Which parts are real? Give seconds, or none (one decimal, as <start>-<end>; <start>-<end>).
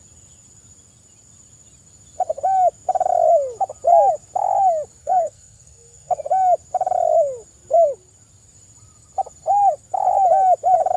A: 0.0-5.0; 6.2-11.0